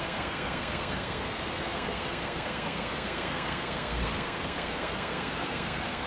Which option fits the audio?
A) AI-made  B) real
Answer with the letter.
A